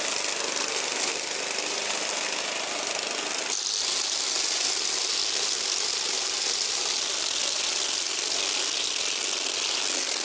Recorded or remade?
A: recorded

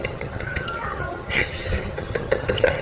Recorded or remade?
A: remade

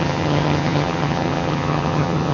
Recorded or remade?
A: remade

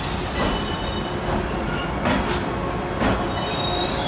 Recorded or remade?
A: recorded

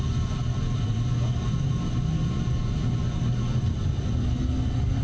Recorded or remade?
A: recorded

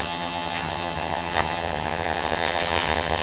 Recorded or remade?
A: remade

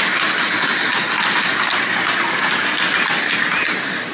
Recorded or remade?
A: recorded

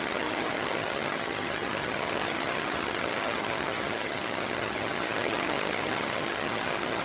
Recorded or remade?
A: remade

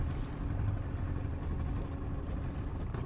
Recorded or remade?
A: recorded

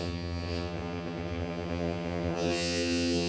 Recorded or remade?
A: remade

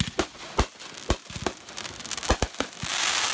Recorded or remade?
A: recorded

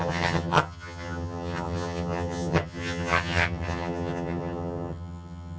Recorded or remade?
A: remade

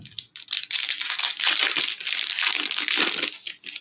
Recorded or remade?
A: recorded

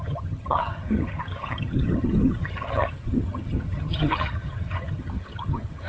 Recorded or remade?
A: remade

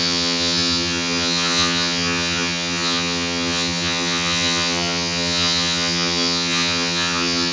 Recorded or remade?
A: remade